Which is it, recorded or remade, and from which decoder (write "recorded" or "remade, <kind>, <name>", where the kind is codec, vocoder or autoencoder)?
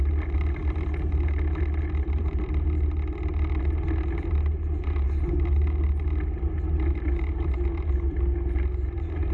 recorded